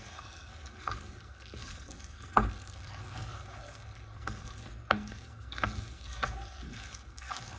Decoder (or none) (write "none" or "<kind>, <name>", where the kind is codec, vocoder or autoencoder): codec, SNAC